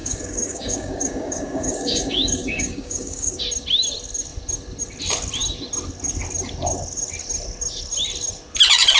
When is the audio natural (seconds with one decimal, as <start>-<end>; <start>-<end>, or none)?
3.4-9.0